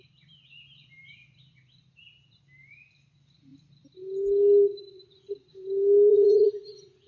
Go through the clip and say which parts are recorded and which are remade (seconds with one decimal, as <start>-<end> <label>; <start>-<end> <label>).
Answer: 0.0-6.1 recorded; 6.1-7.1 remade